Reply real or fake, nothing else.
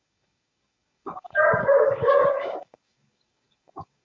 fake